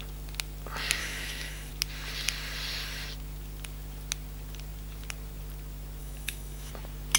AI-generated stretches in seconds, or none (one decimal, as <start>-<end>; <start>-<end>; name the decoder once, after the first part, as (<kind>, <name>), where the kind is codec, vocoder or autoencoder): 1.0-1.7 (autoencoder, DAC-VAE); 6.0-6.7